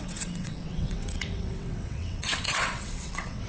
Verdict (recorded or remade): remade